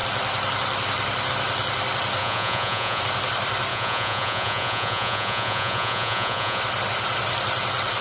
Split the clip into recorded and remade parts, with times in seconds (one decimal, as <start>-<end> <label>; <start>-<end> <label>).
0.0-2.2 recorded; 2.2-3.0 remade; 3.0-3.7 recorded; 3.7-6.6 remade; 6.6-8.0 recorded